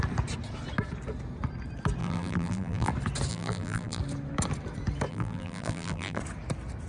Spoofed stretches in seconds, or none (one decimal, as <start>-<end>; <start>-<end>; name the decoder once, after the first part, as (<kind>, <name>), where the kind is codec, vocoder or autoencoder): 2.0-2.9 (vocoder, BigVGAN v2); 3.3-4.0; 5.1-6.2